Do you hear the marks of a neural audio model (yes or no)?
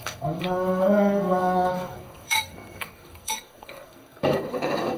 yes